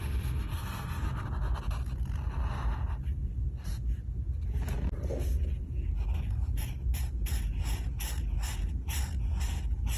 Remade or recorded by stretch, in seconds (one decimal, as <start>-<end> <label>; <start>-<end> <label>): 0.0-0.5 recorded; 0.5-1.1 remade; 1.1-10.0 recorded